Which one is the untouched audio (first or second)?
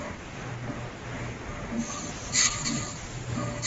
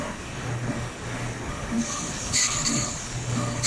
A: first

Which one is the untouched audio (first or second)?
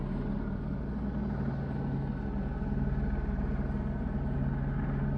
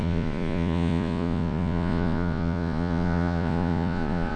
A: first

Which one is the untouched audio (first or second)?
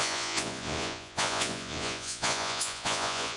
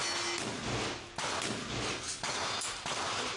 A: second